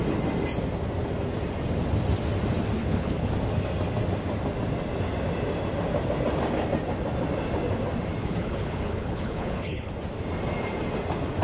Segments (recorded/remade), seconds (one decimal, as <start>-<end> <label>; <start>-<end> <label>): 0.0-2.8 recorded; 2.8-3.3 remade; 3.3-8.2 recorded; 8.2-9.9 remade; 9.9-11.4 recorded